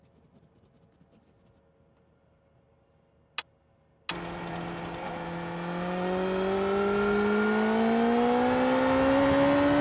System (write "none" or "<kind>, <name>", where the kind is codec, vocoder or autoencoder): none